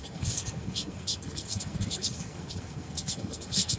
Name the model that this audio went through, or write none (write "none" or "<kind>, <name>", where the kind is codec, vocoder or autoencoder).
codec, SNAC